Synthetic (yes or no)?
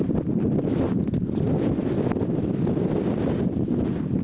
no